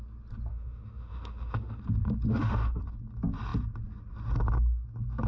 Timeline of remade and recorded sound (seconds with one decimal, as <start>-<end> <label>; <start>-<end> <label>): 0.0-0.5 recorded; 0.5-1.8 remade; 1.8-2.3 recorded; 2.3-2.8 remade; 2.8-5.3 recorded